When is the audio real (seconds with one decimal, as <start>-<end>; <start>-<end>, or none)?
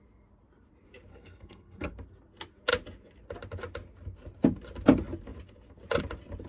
0.0-1.1; 1.9-6.5